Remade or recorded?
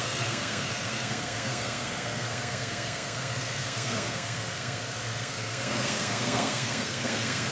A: remade